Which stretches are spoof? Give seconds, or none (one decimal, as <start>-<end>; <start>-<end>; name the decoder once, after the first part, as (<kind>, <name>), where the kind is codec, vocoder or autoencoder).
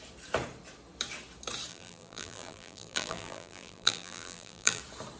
1.7-4.8 (vocoder, BigVGAN v2)